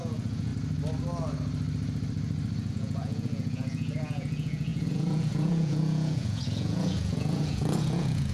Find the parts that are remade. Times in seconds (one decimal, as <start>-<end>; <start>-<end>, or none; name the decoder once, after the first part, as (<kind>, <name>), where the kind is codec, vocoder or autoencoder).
0.0-0.5 (vocoder, Vocos); 2.7-8.3